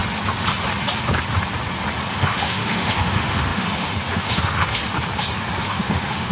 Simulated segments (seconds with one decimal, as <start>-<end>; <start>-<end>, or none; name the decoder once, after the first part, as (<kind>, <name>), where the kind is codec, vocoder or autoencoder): 2.1-4.8 (autoencoder, DAC-VAE); 5.6-6.3